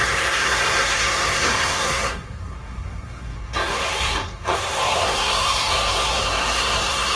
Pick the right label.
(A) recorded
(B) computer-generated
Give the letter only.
B